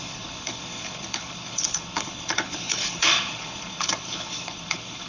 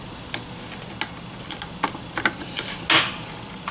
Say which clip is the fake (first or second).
first